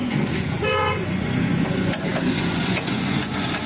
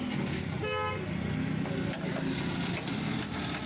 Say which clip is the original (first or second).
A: second